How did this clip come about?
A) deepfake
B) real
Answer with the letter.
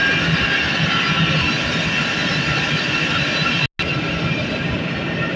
B